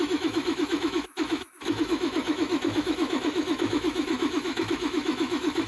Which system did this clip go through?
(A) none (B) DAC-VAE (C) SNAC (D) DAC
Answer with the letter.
B